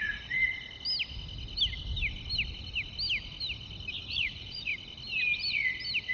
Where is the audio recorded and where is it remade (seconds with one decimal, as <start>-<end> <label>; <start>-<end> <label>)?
0.0-0.4 remade; 0.4-4.1 recorded; 4.1-4.7 remade; 4.7-6.1 recorded